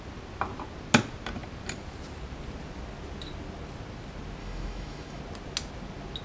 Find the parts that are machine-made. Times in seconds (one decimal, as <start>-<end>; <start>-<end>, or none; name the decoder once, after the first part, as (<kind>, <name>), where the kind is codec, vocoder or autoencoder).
4.4-5.2 (autoencoder, DAC-VAE)